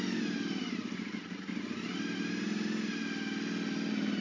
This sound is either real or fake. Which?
real